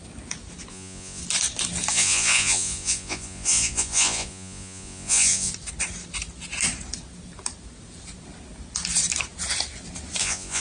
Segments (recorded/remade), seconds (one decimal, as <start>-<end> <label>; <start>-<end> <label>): 0.0-0.7 recorded; 0.7-1.2 remade; 1.2-1.9 recorded; 1.9-5.5 remade; 5.5-10.2 recorded; 10.2-10.6 remade